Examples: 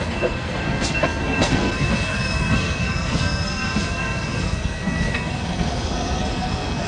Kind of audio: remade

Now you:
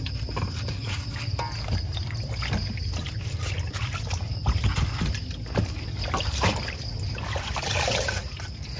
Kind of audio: recorded